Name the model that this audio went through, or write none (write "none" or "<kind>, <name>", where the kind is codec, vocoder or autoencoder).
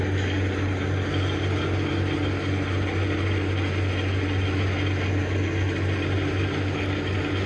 none